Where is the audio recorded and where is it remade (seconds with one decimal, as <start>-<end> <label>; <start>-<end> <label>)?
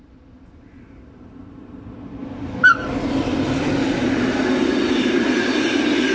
0.0-6.1 recorded